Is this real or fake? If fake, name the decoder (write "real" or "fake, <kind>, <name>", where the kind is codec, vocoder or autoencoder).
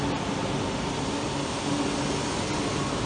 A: real